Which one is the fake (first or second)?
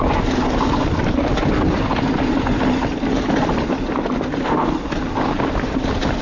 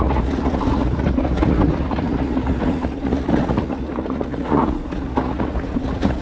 second